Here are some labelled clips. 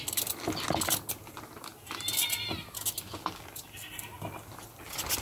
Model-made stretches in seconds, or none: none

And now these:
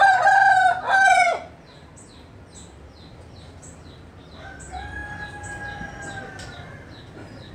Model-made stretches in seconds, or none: none

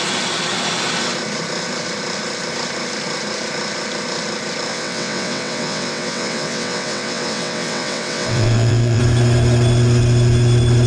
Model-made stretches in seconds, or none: 4.7-9.0 (vocoder, WaveNeXt)